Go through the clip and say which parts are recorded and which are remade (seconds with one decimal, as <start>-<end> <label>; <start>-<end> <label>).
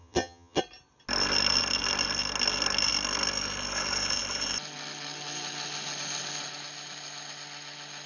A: 0.0-0.6 remade; 0.6-8.1 recorded